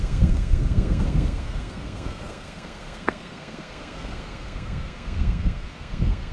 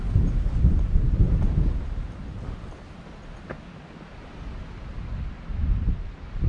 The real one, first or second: second